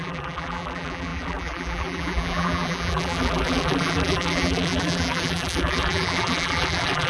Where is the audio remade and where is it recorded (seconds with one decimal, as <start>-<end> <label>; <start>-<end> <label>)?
0.0-7.1 remade